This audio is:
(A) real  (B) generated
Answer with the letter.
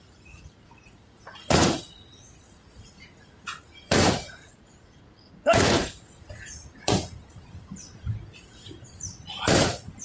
B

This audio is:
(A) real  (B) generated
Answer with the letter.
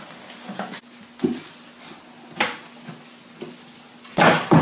A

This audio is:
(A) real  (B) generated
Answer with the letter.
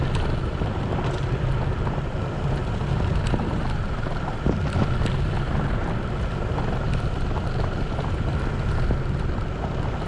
A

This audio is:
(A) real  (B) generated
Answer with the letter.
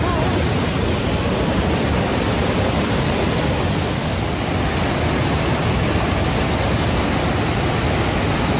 A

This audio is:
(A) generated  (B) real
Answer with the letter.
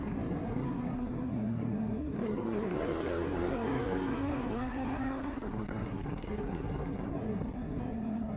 A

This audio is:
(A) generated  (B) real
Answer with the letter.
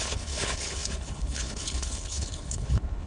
A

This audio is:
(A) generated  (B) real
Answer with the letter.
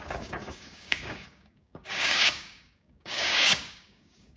A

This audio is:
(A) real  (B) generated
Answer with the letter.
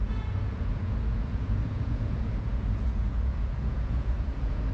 B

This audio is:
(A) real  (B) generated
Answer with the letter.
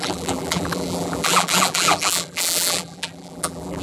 B